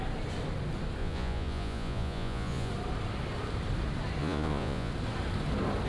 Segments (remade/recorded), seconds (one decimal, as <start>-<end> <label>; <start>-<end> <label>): 0.0-1.0 recorded; 1.0-2.7 remade; 2.7-4.2 recorded; 4.2-4.9 remade; 4.9-5.9 recorded